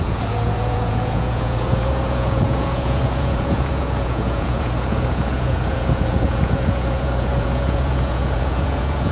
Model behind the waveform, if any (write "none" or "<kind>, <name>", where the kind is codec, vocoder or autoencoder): vocoder, Vocos